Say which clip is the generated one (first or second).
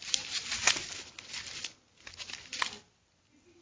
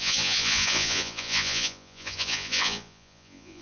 second